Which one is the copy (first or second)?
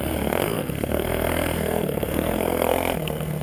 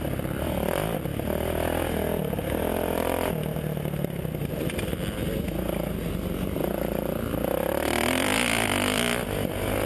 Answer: first